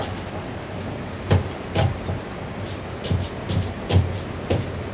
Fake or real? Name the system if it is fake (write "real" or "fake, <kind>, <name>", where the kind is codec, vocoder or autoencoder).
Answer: real